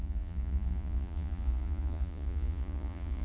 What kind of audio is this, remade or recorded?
remade